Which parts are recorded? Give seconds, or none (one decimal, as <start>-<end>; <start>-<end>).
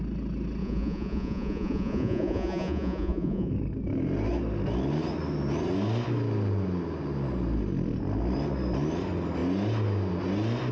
0.0-0.6; 3.5-10.7